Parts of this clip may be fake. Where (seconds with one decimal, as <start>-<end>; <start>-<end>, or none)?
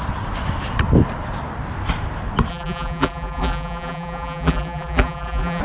2.5-5.6